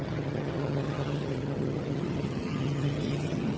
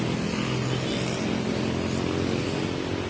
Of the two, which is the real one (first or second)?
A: second